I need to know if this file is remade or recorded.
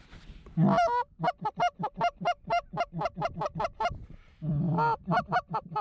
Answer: recorded